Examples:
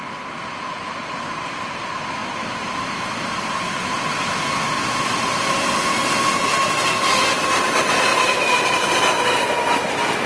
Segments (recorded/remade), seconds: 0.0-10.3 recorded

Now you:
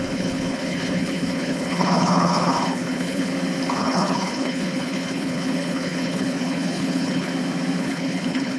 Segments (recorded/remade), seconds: 0.0-3.3 remade; 3.3-3.8 recorded; 3.8-7.3 remade; 7.3-7.8 recorded; 7.8-8.6 remade